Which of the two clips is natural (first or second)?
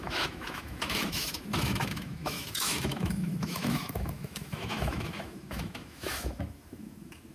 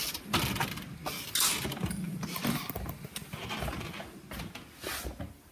second